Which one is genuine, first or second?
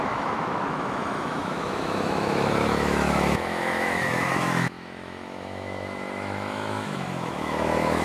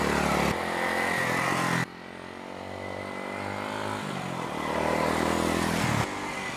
second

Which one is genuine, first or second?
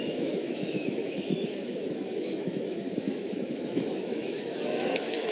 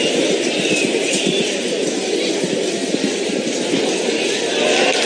second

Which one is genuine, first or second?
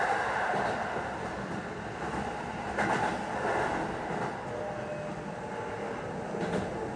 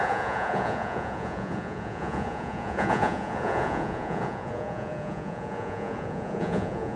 first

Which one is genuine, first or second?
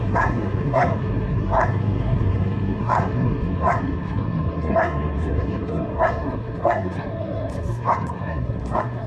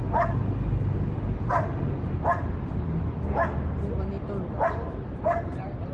second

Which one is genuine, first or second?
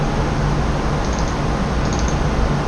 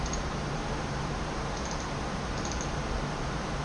first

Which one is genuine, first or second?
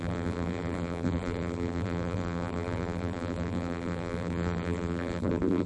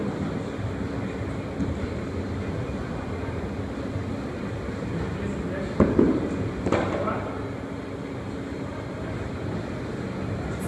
second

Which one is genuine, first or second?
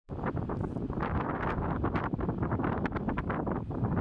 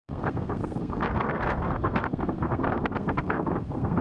first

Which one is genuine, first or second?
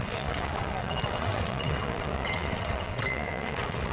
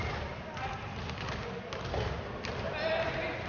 second